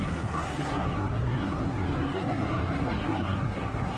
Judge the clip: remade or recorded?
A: remade